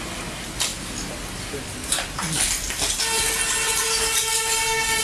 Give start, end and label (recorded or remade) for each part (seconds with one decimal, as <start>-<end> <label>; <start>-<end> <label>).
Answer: 0.0-5.0 recorded